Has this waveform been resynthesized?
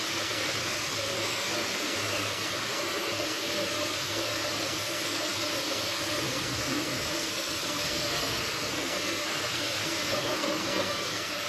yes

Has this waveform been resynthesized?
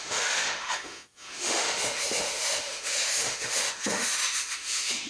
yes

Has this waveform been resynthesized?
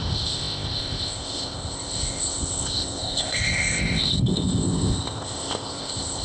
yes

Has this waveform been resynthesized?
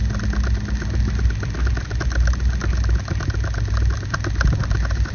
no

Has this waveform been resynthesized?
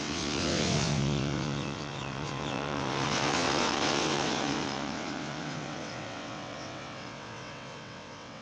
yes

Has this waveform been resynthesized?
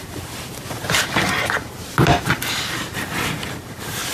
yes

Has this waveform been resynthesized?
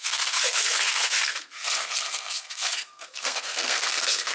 yes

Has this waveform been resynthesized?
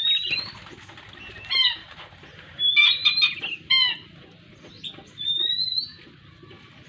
no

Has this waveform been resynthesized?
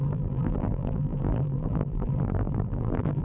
yes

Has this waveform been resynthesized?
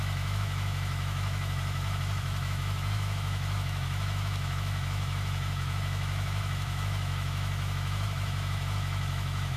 yes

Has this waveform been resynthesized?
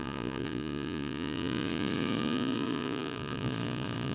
yes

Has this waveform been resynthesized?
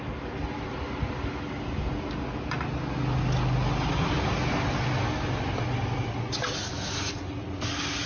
no